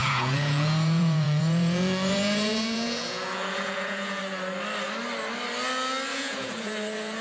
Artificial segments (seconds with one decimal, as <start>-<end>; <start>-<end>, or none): 0.0-4.2; 6.1-7.2